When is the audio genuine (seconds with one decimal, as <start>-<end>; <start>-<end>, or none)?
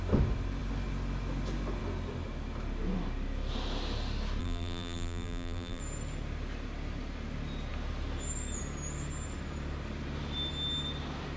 0.0-4.4; 5.8-11.4